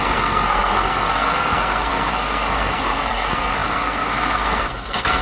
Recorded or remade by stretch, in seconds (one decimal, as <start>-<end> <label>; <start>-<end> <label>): 0.0-5.2 remade